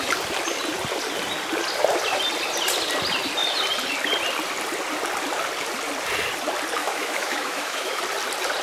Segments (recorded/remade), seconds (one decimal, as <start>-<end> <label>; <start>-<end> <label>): 0.0-6.8 recorded; 6.8-8.0 remade; 8.0-8.6 recorded